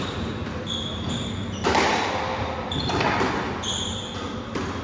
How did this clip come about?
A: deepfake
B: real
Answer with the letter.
B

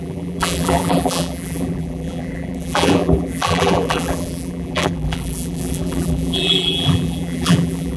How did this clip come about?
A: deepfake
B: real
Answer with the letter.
A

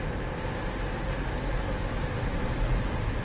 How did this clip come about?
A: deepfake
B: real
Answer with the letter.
B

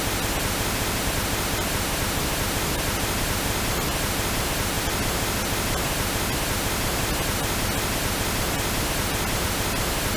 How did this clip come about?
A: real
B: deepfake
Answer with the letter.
A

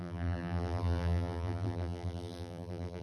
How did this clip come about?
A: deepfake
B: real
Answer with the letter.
A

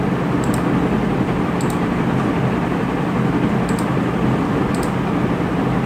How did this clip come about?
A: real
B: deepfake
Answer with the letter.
A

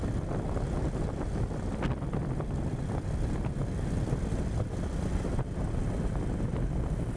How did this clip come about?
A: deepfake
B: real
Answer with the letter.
B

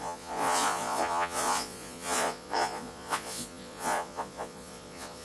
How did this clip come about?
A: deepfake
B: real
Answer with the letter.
A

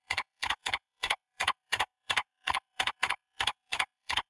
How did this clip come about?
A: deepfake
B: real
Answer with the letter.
A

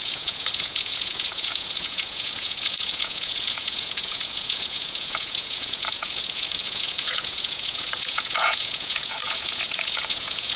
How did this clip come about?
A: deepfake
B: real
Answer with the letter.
A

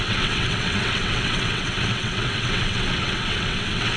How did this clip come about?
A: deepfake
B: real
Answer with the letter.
A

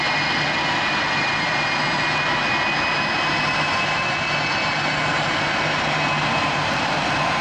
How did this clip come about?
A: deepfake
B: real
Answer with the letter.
B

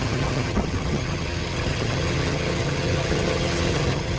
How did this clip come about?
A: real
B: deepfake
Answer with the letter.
B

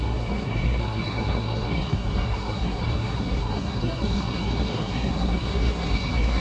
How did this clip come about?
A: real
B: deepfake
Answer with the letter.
B